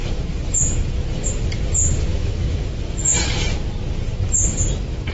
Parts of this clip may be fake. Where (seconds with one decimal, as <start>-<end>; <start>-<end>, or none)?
2.1-2.6